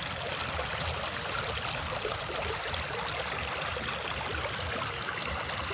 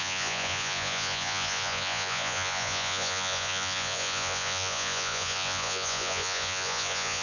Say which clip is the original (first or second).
first